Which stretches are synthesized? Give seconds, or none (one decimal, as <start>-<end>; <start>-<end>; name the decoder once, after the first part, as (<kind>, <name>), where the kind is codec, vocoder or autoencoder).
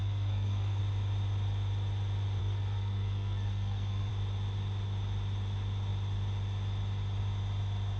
0.0-0.8 (codec, SNAC); 2.4-4.1